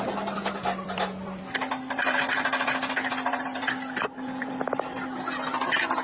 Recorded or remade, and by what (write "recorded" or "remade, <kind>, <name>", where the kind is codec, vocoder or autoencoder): recorded